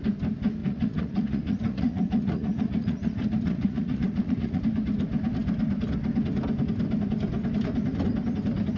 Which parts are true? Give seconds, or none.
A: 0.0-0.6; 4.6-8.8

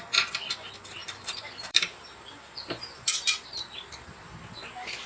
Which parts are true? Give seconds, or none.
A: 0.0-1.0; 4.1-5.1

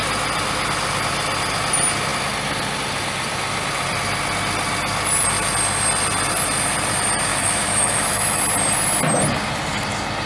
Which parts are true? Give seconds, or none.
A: 0.0-7.3; 8.4-10.3

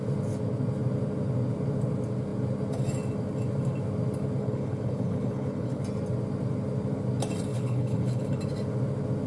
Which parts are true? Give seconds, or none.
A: 0.0-4.4; 5.8-7.5; 8.4-9.3

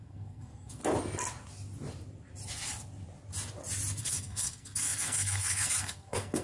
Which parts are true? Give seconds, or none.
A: 0.8-4.0